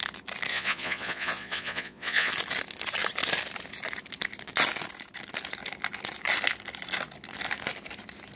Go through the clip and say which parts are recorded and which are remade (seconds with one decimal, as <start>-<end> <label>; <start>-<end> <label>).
0.0-0.5 recorded; 0.5-2.3 remade; 2.3-8.4 recorded